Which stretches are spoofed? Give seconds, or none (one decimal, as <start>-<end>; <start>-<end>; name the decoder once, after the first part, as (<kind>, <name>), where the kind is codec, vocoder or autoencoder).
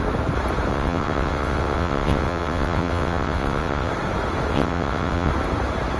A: 0.7-3.9 (vocoder, WaveNeXt); 4.5-5.3